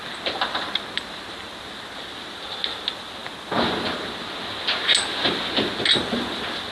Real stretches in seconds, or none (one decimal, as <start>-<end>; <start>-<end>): 0.0-6.7